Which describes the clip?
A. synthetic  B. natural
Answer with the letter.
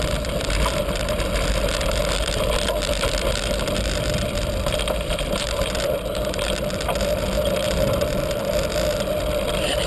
B